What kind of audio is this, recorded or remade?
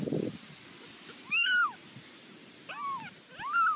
recorded